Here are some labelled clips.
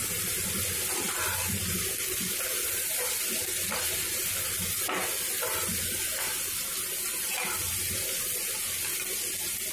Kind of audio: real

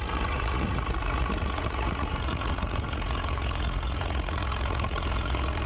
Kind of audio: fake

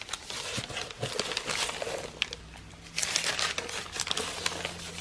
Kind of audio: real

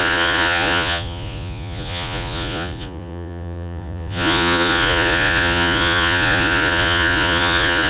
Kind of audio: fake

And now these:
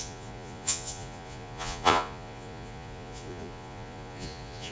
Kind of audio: fake